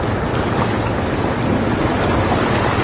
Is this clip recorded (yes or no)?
yes